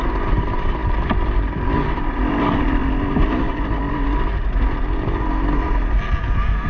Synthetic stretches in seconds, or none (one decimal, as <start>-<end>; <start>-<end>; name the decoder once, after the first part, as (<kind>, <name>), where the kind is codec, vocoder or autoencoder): none